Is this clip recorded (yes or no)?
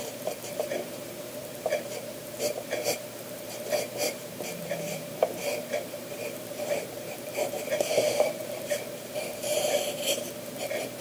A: no